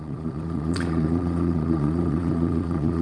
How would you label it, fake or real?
fake